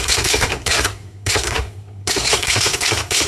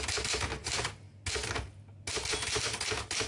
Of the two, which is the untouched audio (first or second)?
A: second